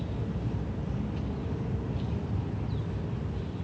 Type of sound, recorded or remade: recorded